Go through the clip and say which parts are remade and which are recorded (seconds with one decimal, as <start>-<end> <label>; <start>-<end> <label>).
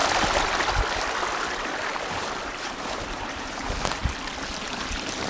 0.0-2.7 recorded; 2.7-4.0 remade; 4.0-4.6 recorded; 4.6-5.3 remade